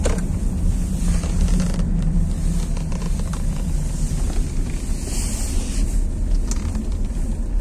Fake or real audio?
real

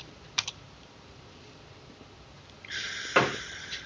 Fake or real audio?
fake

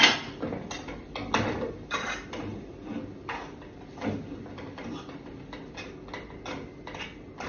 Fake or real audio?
real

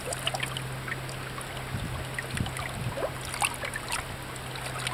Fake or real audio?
real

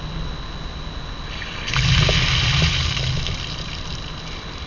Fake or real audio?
real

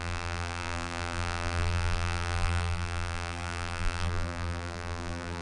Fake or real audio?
fake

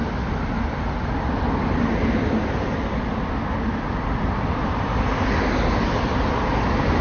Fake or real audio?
real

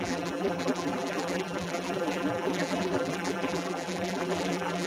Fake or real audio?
fake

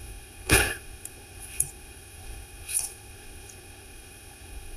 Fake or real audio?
fake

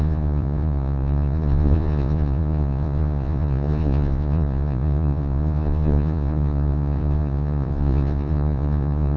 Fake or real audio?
fake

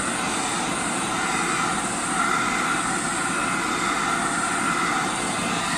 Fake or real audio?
real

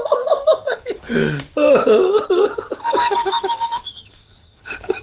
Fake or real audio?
fake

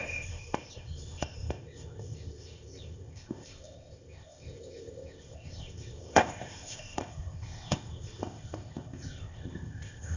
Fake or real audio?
fake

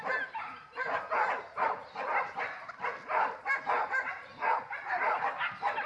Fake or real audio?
real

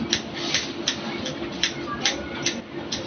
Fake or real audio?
real